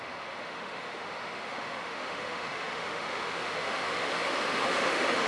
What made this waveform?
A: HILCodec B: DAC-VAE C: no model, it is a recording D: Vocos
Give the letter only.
B